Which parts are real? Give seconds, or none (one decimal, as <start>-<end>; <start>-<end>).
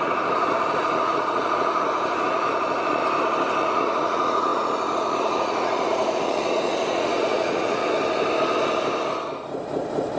3.0-3.6; 7.8-10.2